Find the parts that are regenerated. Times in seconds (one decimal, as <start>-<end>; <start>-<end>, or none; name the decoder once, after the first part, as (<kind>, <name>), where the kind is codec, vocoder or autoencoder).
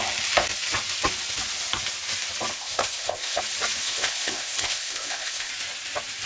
2.5-3.4 (codec, ZipCodec); 3.8-5.5